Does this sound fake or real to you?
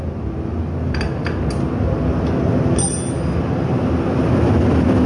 real